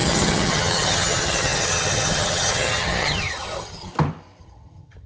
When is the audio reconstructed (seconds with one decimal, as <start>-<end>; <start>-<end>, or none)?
0.0-3.9; 4.4-5.1